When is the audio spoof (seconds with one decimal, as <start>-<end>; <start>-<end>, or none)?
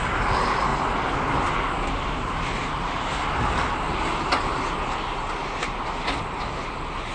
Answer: none